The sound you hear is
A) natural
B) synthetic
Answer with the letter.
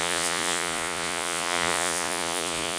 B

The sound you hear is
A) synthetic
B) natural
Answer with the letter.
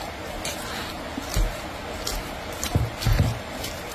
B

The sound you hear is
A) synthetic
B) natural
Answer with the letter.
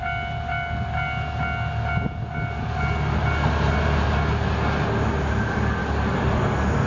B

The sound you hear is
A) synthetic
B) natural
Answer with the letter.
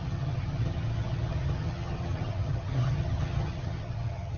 A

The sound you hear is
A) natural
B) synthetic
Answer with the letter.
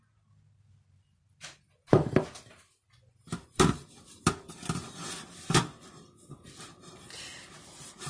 A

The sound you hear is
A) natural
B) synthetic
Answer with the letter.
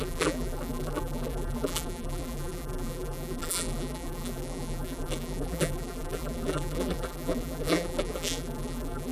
B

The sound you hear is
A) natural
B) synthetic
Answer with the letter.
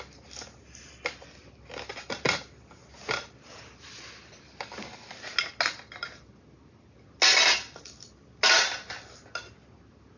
A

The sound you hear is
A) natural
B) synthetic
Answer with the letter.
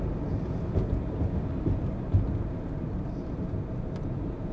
A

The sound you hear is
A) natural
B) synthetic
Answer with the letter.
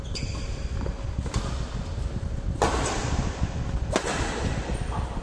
A